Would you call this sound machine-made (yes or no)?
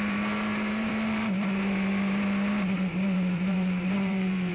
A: yes